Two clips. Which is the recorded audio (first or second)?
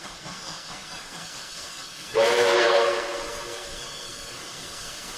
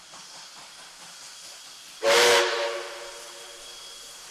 second